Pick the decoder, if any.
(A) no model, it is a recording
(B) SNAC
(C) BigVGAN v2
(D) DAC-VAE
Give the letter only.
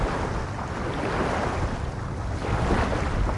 A